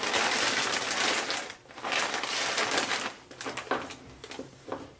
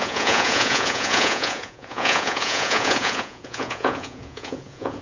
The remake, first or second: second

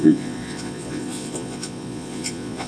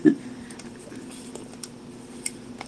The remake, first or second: first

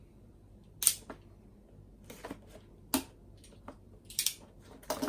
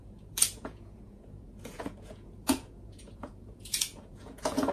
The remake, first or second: second